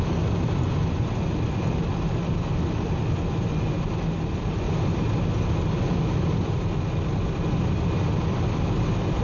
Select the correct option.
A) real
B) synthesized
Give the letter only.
A